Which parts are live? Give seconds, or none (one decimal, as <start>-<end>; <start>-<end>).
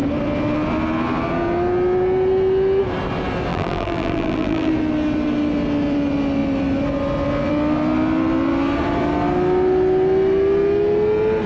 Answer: 0.0-3.5; 4.7-11.5